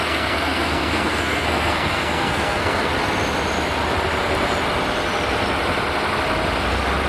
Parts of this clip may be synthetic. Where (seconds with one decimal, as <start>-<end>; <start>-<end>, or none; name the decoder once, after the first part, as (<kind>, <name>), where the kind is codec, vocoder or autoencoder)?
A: 0.0-2.9 (codec, SNAC)